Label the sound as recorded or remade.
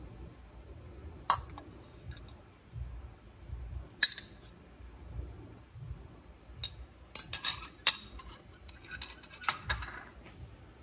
recorded